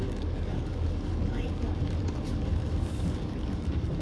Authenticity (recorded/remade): remade